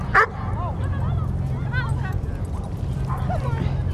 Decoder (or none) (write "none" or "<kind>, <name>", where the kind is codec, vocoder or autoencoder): none